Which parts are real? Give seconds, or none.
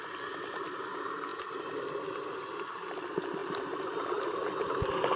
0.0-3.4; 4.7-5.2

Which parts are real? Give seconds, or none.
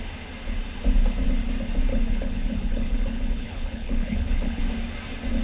0.0-1.9; 4.6-5.4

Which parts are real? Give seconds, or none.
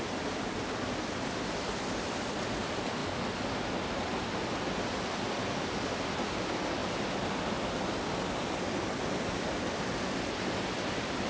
0.0-11.3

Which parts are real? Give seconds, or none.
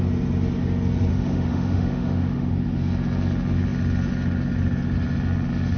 0.0-1.1; 2.5-5.8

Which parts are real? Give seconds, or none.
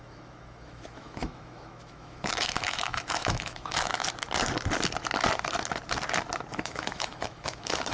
4.0-6.5